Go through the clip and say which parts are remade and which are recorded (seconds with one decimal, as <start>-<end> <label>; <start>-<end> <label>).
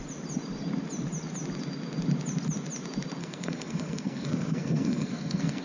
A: 0.0-3.2 recorded; 3.2-5.6 remade